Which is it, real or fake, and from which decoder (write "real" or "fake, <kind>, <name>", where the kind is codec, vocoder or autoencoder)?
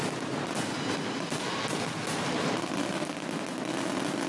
real